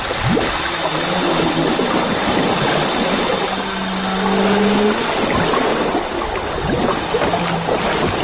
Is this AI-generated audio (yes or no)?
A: no